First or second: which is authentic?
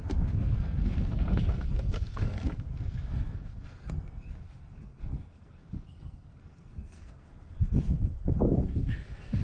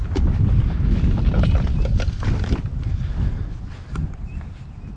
second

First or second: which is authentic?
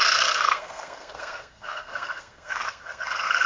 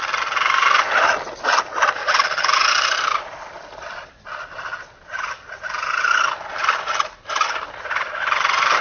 second